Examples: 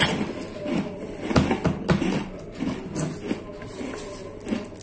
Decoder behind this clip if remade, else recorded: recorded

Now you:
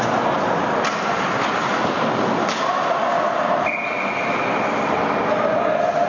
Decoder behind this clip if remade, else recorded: recorded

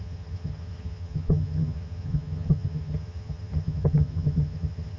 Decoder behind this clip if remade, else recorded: remade, vocoder, HiFi-GAN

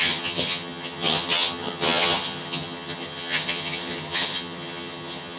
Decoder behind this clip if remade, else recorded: remade, vocoder, HiFi-GAN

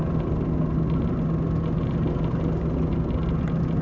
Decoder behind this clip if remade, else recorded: recorded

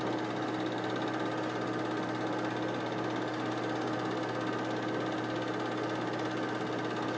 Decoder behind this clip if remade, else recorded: recorded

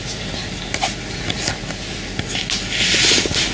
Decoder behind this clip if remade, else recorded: recorded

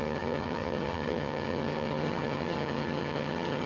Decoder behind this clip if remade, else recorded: remade, vocoder, HiFi-GAN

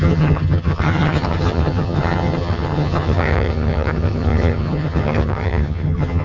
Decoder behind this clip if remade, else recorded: remade, vocoder, HiFi-GAN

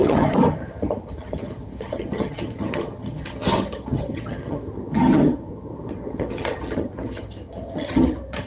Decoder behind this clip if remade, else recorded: remade, vocoder, HiFi-GAN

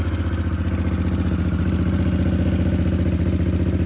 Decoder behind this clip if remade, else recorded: recorded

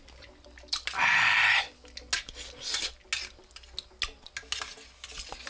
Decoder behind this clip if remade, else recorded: recorded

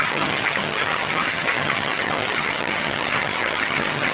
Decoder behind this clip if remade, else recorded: remade, vocoder, HiFi-GAN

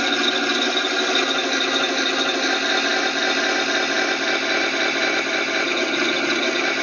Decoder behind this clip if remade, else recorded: recorded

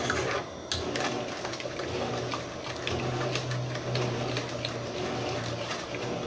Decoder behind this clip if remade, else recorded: recorded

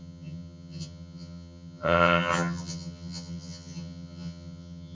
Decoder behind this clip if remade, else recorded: remade, vocoder, HiFi-GAN